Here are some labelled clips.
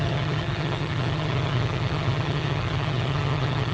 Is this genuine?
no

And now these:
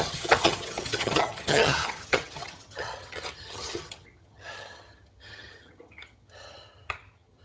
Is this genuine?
no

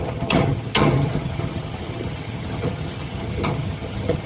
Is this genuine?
no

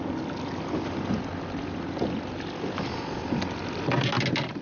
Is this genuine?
yes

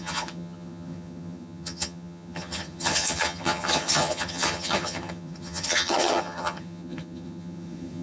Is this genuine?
no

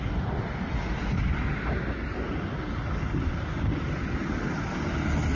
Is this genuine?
yes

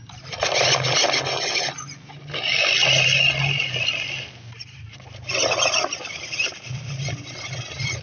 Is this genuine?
yes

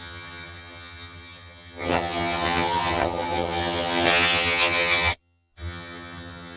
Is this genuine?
no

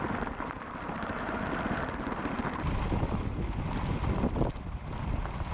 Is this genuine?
yes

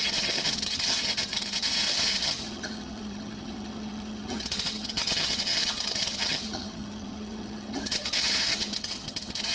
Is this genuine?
no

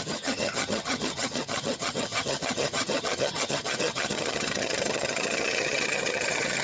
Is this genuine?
no